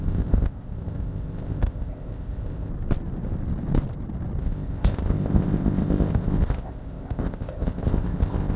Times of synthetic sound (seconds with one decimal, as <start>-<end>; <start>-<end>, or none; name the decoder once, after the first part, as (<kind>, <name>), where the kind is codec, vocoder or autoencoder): 0.0-2.7 (codec, ZipCodec); 4.4-8.6